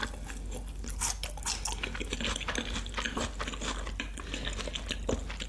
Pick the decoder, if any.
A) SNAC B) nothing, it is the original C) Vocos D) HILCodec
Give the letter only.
B